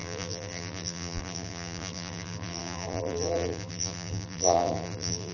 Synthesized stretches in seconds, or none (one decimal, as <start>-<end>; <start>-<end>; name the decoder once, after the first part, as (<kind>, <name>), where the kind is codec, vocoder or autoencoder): 0.0-5.3 (vocoder, BigVGAN v2)